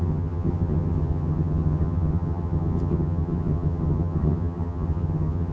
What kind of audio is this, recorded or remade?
remade